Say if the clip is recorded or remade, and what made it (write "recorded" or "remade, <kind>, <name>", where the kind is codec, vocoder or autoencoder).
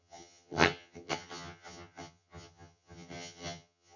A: remade, vocoder, HiFi-GAN